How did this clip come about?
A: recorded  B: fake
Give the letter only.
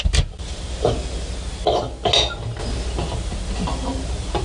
A